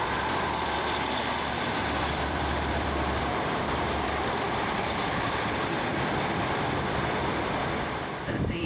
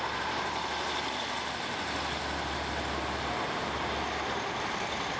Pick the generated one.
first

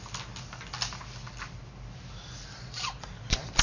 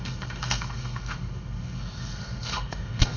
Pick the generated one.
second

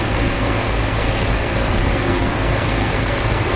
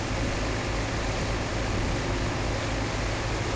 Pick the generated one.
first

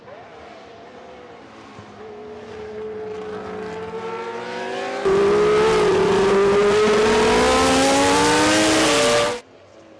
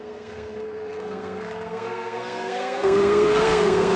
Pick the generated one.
second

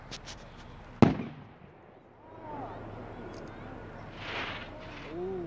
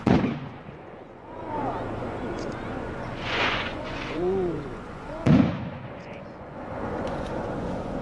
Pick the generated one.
second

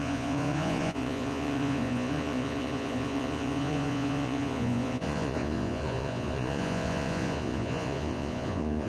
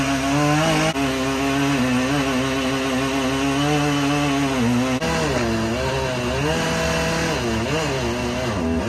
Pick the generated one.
first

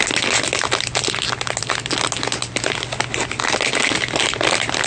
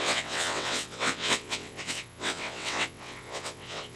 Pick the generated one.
second